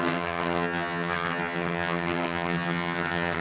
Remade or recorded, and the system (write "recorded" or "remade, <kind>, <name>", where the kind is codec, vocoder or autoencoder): remade, vocoder, HiFi-GAN